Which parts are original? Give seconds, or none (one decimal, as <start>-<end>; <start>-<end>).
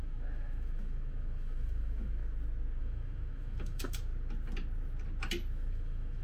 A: 2.2-2.8; 4.1-5.7